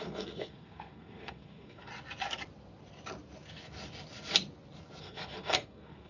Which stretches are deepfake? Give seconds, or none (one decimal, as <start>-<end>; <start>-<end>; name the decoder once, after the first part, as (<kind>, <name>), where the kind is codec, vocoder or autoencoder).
0.0-1.9 (codec, SNAC); 5.0-6.1